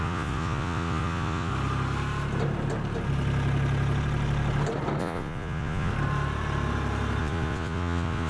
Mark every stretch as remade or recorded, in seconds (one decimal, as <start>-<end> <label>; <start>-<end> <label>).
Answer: 0.0-1.5 remade; 1.5-5.0 recorded; 5.0-5.9 remade; 5.9-7.2 recorded; 7.2-8.3 remade